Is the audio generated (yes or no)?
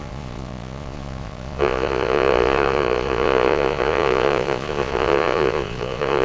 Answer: yes